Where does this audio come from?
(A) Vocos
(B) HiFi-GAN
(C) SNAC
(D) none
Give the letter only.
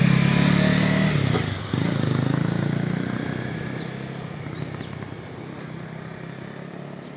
D